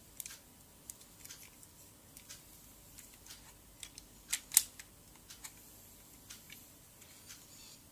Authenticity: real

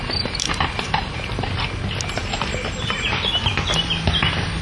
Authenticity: real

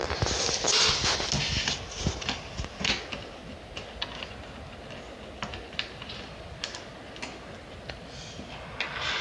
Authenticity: real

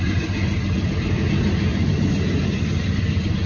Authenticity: real